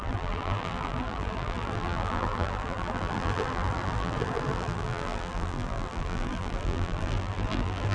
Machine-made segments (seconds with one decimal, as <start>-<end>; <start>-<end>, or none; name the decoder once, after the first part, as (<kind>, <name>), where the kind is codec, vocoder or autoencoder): 0.0-7.9 (vocoder, BigVGAN v2)